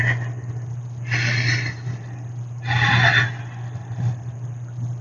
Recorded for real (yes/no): yes